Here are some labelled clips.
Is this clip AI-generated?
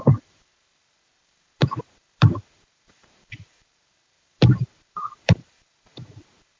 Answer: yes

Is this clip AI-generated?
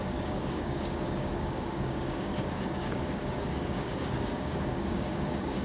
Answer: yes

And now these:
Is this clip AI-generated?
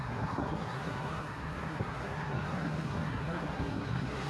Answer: yes